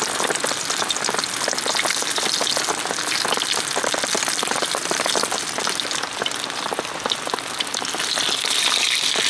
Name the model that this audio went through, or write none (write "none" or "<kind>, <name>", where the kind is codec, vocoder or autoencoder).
none